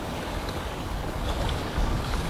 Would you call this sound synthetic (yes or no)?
yes